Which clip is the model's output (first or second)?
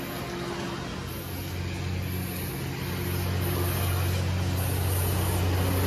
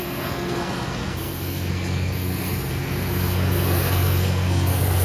second